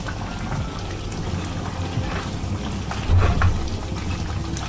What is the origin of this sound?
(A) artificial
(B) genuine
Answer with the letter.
B